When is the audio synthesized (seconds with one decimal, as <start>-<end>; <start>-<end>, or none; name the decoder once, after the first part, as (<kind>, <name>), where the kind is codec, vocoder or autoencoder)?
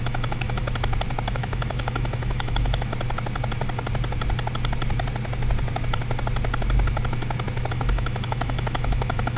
0.0-0.6 (autoencoder, DAC-VAE); 1.3-2.9; 7.7-9.4